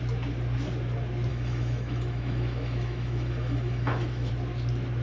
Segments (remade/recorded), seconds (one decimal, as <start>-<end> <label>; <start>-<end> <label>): 0.0-1.3 recorded; 1.3-4.3 remade; 4.3-5.0 recorded